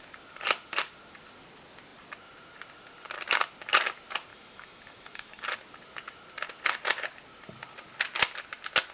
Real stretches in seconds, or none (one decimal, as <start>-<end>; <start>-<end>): 0.0-4.3; 5.4-8.9